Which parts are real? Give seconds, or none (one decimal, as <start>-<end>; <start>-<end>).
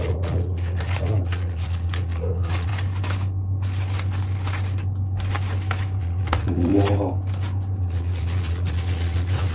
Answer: 2.7-6.0; 6.7-7.8